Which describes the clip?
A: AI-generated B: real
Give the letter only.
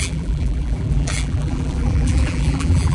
A